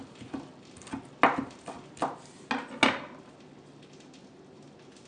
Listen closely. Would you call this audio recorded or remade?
recorded